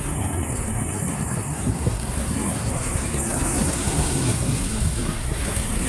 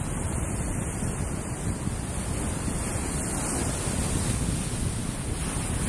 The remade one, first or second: first